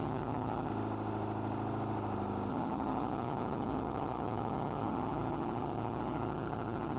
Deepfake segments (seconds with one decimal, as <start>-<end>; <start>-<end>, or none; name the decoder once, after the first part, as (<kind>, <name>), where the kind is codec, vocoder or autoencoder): 0.0-0.7 (vocoder, HiFi-GAN); 2.5-7.0